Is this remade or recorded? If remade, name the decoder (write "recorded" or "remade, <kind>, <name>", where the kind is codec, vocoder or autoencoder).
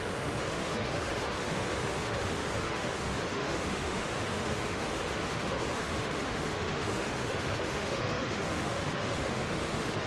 remade, autoencoder, DAC-VAE